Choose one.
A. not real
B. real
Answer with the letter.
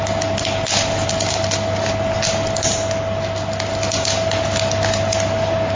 B